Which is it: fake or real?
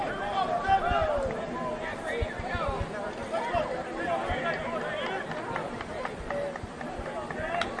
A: real